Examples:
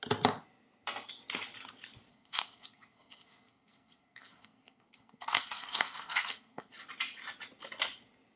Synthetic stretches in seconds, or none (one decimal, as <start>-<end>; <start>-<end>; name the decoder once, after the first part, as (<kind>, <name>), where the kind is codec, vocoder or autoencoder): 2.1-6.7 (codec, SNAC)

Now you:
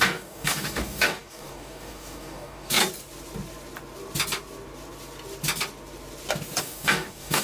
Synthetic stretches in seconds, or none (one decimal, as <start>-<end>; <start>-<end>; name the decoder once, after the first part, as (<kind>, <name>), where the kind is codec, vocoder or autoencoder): 0.0-2.8 (codec, DAC); 6.6-7.4

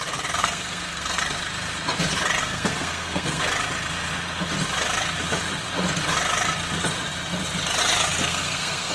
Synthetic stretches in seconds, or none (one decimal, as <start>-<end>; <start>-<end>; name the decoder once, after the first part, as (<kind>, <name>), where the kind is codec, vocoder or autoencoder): 0.4-1.2 (codec, SNAC); 2.4-3.4; 8.2-8.9

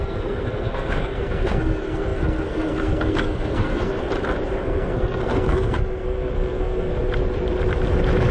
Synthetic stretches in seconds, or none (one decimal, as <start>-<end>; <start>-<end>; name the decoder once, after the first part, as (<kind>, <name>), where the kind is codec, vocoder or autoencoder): 0.0-4.0 (codec, SNAC); 4.6-7.0

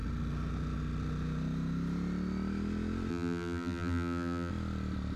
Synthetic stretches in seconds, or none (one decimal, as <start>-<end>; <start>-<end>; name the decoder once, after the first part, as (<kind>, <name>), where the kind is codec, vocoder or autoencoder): 3.1-4.5 (vocoder, BigVGAN v2)

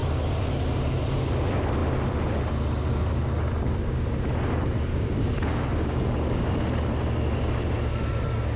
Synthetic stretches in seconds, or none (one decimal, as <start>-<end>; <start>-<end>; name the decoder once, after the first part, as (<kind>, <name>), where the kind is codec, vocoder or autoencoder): 4.9-6.5 (codec, DAC)